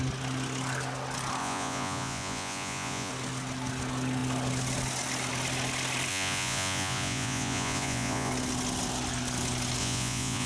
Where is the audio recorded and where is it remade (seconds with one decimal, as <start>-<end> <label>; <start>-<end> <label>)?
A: 0.0-1.4 recorded; 1.4-3.1 remade; 3.1-6.1 recorded; 6.1-8.3 remade; 8.3-9.8 recorded; 9.8-10.5 remade